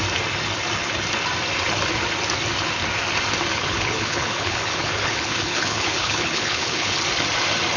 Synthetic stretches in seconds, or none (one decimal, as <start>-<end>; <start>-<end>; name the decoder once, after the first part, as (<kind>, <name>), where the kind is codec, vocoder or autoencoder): 3.5-7.0 (codec, HILCodec)